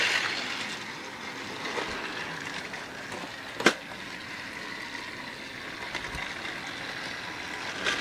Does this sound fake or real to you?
real